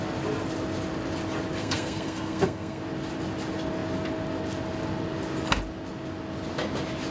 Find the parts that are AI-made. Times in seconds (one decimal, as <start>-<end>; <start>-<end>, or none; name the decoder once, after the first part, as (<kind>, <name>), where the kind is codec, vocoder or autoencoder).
1.6-2.8 (codec, SNAC)